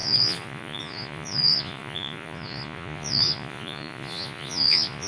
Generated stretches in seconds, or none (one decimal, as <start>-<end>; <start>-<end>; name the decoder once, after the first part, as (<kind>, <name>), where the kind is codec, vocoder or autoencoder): 0.0-5.1 (vocoder, Vocos)